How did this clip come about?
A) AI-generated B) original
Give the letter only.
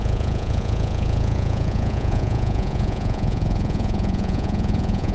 A